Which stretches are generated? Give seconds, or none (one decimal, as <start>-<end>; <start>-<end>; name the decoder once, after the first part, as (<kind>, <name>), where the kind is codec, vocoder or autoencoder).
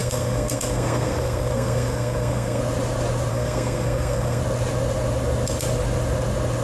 0.0-2.6 (codec, SNAC); 3.3-4.4